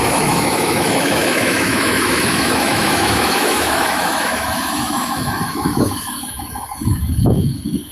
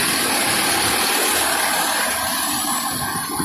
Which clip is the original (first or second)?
second